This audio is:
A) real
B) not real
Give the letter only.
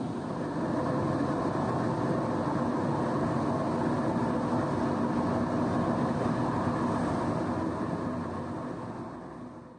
A